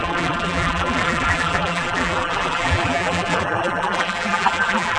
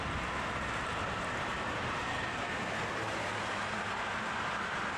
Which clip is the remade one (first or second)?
first